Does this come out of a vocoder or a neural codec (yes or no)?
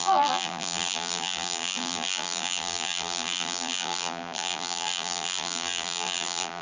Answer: yes